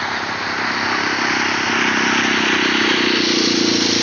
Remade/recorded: recorded